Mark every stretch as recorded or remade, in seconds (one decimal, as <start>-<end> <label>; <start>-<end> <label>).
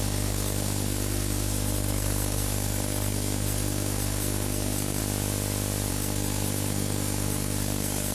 0.0-5.0 remade; 5.0-5.9 recorded; 5.9-8.1 remade